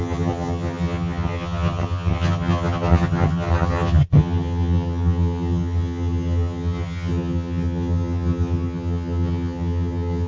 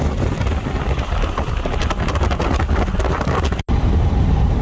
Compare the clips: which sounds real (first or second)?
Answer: second